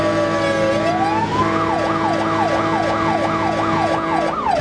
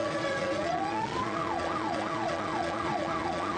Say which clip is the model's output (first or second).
second